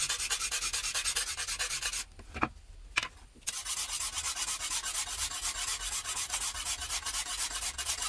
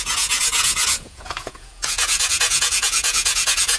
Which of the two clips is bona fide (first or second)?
first